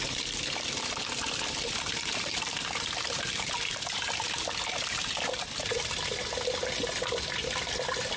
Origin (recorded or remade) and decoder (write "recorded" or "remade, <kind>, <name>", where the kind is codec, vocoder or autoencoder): recorded